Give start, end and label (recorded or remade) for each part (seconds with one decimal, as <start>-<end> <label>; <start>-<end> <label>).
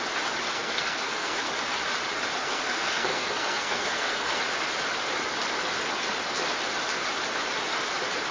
0.0-0.5 recorded; 0.5-1.5 remade; 1.5-2.4 recorded; 2.4-4.4 remade; 4.4-8.3 recorded